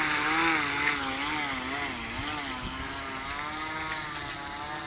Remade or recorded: recorded